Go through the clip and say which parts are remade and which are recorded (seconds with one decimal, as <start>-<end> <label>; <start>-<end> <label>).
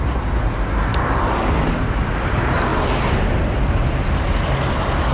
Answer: 0.0-5.1 recorded